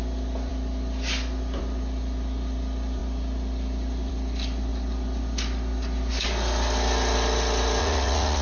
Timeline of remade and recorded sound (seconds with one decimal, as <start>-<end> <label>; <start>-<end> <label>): 0.0-7.8 recorded; 7.8-8.4 remade